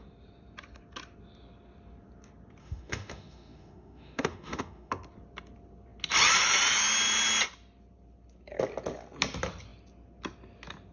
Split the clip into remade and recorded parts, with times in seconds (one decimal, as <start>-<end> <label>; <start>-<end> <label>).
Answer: 0.0-2.6 recorded; 2.6-4.9 remade; 4.9-10.9 recorded